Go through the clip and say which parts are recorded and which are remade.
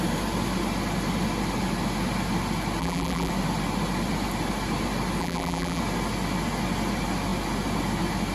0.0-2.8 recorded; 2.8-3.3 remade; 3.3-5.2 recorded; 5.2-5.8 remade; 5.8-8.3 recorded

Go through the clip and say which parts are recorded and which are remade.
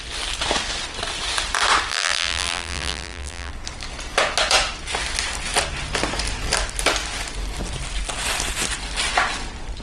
0.0-1.9 recorded; 1.9-3.5 remade; 3.5-9.8 recorded